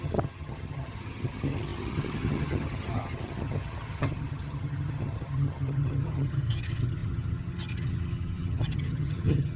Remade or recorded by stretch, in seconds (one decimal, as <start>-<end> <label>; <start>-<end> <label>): 0.0-9.6 remade